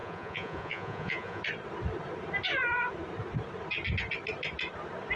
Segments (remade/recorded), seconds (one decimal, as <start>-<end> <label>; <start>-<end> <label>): 0.0-1.4 remade; 1.4-5.2 recorded